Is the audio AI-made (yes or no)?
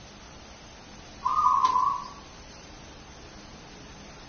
yes